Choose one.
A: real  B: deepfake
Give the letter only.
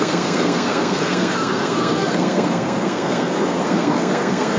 B